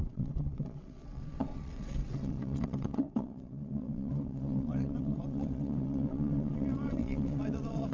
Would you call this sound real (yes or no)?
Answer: no